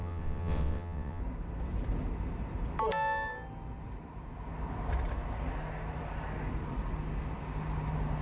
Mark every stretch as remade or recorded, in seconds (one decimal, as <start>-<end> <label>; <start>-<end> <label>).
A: 0.0-1.2 remade; 1.2-8.2 recorded